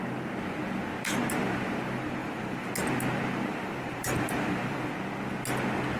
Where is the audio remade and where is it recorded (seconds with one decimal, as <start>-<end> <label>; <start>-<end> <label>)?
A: 0.0-2.2 recorded; 2.2-2.7 remade; 2.7-3.5 recorded; 3.5-4.9 remade; 4.9-6.0 recorded